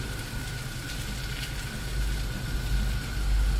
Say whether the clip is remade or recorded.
recorded